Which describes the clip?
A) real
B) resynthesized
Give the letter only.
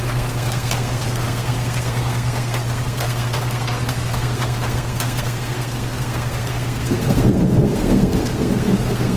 B